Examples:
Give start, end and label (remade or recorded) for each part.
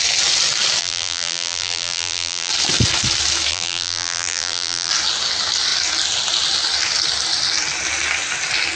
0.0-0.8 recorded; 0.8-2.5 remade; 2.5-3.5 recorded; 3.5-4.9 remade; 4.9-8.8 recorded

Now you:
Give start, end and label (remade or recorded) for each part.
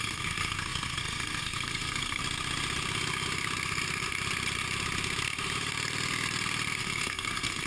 0.0-2.2 remade; 2.2-6.8 recorded; 6.8-7.7 remade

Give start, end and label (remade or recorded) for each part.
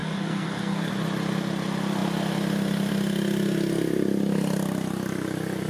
0.0-0.9 remade; 0.9-5.7 recorded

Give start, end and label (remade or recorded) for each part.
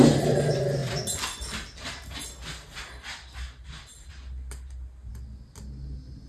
0.0-6.3 recorded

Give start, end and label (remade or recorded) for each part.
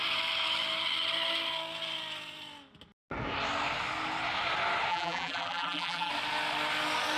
0.0-4.9 recorded; 4.9-6.1 remade; 6.1-7.2 recorded